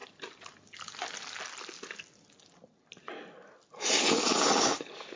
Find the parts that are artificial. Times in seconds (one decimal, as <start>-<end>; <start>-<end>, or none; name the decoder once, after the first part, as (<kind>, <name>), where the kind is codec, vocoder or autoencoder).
none